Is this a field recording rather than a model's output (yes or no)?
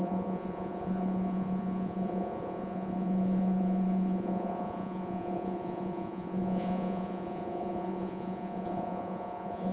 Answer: no